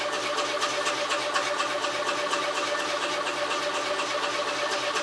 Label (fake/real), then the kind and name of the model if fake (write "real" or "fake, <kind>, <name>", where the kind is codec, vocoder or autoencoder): real